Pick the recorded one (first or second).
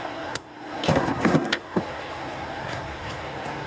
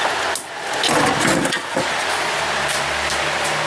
second